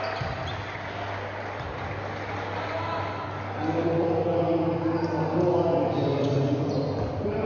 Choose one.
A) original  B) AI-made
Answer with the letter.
A